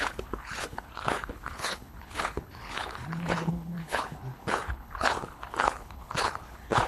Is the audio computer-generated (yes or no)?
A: yes